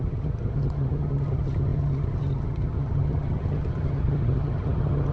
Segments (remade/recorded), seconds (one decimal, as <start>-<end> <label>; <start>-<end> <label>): 0.0-5.1 remade